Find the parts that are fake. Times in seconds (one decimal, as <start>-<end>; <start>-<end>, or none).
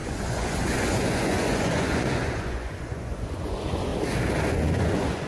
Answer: 0.0-3.9; 4.5-5.3